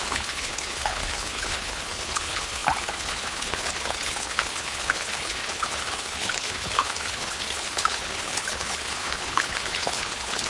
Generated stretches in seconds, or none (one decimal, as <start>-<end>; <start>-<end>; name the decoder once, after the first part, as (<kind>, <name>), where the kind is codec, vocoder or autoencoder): 0.0-10.5 (codec, HILCodec)